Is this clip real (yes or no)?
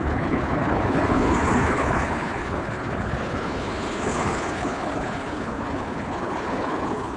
no